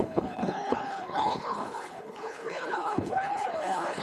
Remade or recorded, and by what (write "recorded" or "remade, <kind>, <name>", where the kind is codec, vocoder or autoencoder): remade, codec, HILCodec